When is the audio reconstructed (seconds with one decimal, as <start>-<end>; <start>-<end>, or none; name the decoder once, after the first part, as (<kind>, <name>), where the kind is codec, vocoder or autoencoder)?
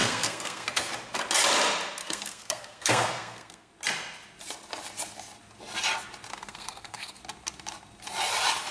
0.0-0.9 (codec, SNAC); 2.0-3.7; 6.3-7.2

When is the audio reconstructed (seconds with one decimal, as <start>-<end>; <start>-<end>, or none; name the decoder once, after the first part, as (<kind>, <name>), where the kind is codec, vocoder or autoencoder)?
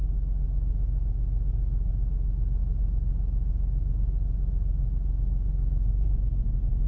none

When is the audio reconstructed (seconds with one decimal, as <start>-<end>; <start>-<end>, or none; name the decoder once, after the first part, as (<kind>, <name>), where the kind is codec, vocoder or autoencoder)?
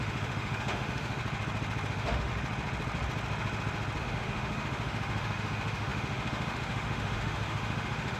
0.0-1.2 (autoencoder, DAC-VAE); 1.9-2.3; 4.0-8.2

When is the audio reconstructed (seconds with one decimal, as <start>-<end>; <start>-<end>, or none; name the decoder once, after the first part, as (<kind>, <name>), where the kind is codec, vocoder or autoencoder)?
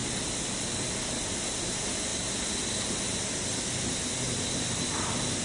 0.0-2.1 (vocoder, BigVGAN v2)